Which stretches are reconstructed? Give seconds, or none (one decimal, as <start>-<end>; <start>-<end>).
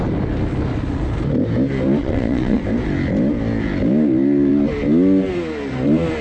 2.0-2.6